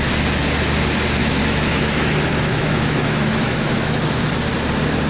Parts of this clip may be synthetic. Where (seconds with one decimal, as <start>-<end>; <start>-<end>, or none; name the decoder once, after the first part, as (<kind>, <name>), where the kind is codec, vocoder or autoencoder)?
1.2-4.3 (autoencoder, DAC-VAE)